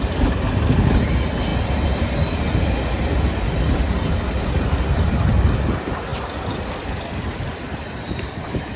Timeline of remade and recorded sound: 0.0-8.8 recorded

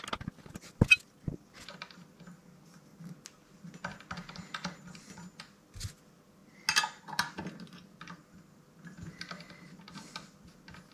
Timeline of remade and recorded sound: 0.0-10.9 recorded

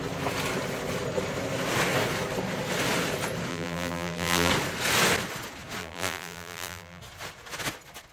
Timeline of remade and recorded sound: 0.0-3.5 recorded; 3.5-4.5 remade; 4.5-5.8 recorded; 5.8-7.0 remade; 7.0-8.1 recorded

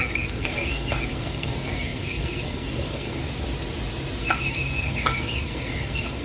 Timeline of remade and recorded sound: 0.0-3.2 remade; 3.2-4.2 recorded; 4.2-6.2 remade